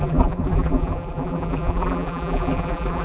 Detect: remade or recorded remade